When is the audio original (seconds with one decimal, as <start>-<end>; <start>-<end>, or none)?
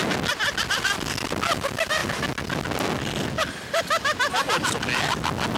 0.0-5.6